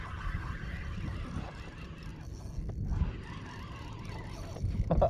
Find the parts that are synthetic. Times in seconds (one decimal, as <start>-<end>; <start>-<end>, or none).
0.0-2.1; 3.4-5.1